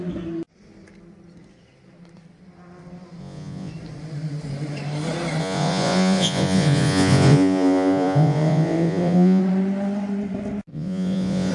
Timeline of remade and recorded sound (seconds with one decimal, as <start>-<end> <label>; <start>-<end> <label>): 0.0-3.2 recorded; 3.2-3.7 remade; 3.7-5.4 recorded; 5.4-9.4 remade; 9.4-10.7 recorded; 10.7-11.5 remade